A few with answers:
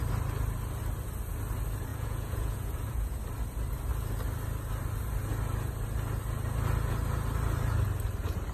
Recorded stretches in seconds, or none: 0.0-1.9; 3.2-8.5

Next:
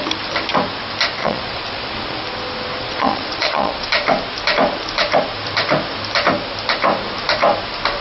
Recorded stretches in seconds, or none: 0.0-1.2; 2.2-2.8; 3.9-8.0

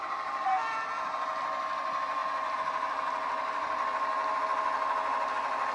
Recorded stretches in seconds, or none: 0.0-5.7